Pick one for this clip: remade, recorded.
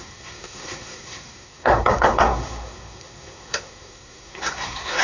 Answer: remade